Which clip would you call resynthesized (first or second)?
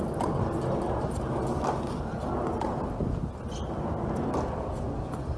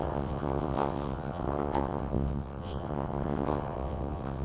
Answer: second